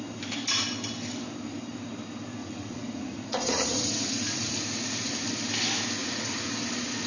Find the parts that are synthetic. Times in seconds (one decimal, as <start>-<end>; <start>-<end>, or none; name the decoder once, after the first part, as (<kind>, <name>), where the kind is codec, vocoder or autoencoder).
2.4-5.1 (vocoder, Vocos); 6.0-6.5